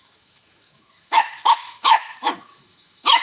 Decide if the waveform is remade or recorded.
remade